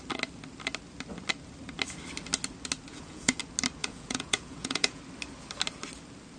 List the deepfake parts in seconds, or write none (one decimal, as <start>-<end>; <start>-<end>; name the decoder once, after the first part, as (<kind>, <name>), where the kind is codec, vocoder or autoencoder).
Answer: 2.9-3.4 (vocoder, Vocos); 3.8-5.0